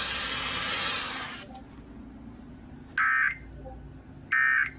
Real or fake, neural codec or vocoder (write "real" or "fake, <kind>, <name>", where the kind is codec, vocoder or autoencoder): real